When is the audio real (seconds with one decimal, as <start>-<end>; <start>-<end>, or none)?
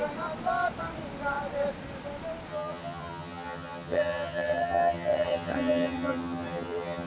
0.0-2.5